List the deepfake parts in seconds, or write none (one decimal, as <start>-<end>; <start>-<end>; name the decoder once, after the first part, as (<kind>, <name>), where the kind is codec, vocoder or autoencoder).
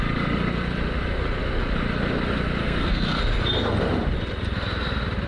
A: 2.6-3.2 (codec, SNAC)